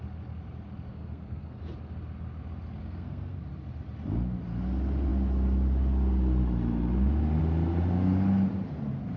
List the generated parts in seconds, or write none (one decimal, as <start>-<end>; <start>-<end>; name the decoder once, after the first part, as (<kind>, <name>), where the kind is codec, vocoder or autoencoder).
0.9-1.6 (codec, SNAC); 2.8-3.4